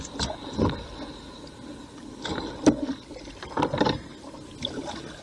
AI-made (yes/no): no